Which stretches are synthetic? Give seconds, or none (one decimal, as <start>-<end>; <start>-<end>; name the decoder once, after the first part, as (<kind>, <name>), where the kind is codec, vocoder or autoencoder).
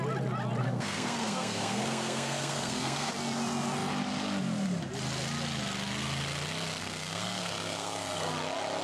0.6-3.1 (codec, SNAC); 6.8-8.3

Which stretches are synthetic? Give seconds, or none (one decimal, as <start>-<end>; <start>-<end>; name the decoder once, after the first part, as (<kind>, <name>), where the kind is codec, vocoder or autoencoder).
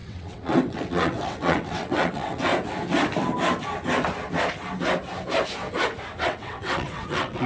0.0-2.5 (vocoder, WaveNeXt); 6.2-7.5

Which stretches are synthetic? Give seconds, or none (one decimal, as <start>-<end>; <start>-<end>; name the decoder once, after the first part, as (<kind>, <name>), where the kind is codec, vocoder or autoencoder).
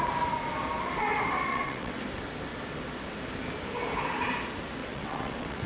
1.5-2.0 (vocoder, WaveNeXt); 4.8-5.7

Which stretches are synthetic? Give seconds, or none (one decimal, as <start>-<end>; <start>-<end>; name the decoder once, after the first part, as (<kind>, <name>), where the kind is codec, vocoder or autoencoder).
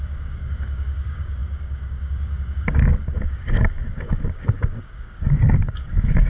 0.0-6.3 (codec, DAC)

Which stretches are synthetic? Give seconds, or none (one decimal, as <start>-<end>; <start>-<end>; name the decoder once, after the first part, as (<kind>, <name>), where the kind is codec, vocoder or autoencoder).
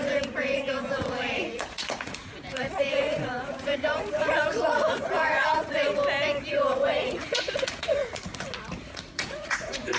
0.0-5.9 (vocoder, Vocos); 6.5-8.3; 8.9-10.0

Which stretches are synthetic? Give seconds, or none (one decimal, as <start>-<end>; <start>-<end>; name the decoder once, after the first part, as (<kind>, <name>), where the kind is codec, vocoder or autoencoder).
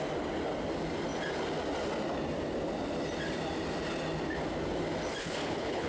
5.2-5.9 (codec, HILCodec)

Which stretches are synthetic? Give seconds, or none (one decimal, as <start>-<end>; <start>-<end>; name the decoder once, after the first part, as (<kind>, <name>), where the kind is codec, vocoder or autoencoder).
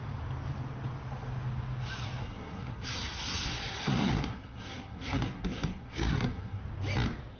2.2-6.6 (codec, SNAC)